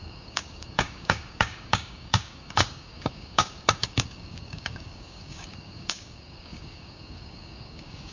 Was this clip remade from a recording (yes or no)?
yes